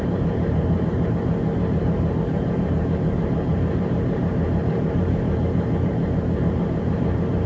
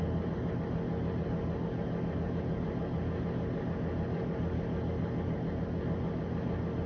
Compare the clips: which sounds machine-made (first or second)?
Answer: first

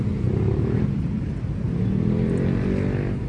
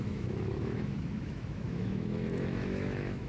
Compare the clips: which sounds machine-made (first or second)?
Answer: second